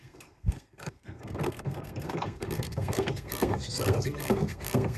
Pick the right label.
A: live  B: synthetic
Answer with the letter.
B